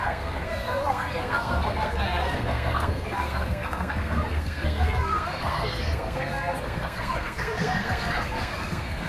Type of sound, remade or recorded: remade